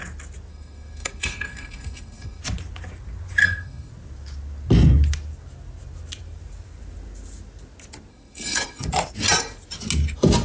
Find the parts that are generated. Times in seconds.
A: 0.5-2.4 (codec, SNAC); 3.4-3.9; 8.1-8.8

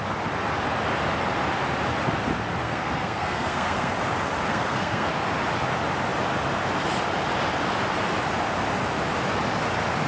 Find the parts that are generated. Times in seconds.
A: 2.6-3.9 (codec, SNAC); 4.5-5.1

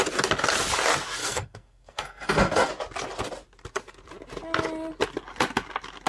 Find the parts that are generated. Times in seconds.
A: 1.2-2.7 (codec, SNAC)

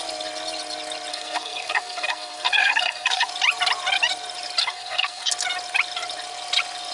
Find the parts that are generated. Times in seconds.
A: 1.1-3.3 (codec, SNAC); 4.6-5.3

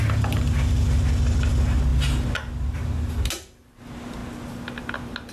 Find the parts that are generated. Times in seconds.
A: none

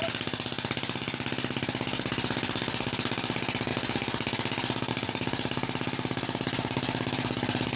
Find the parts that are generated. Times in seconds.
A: none